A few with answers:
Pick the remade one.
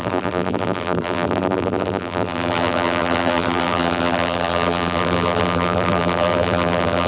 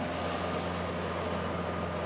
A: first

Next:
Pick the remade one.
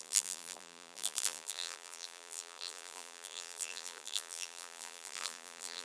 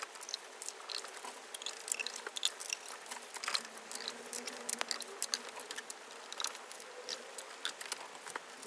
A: first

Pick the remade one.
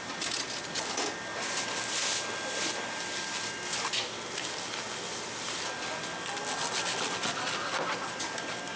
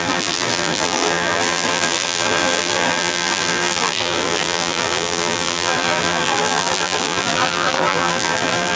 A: second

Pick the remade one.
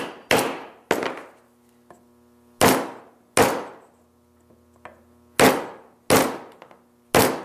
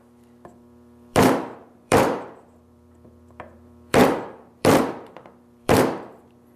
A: second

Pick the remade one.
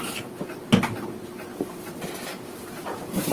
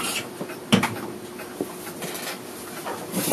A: first